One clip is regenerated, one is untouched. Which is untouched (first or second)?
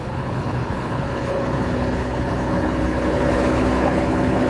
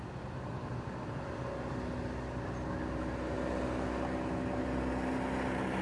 second